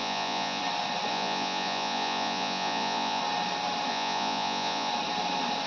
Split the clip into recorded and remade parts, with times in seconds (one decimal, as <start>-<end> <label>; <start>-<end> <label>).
0.0-0.6 remade; 0.6-1.1 recorded; 1.1-3.2 remade; 3.2-3.9 recorded; 3.9-4.9 remade; 4.9-5.7 recorded